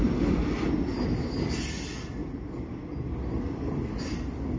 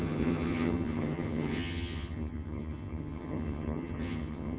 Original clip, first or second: first